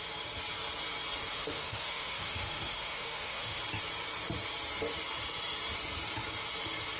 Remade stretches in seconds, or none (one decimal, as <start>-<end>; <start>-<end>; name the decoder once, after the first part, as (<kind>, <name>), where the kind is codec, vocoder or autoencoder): 1.3-3.6 (autoencoder, DAC-VAE)